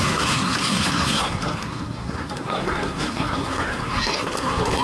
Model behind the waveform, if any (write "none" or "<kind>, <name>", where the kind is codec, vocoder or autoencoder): codec, SNAC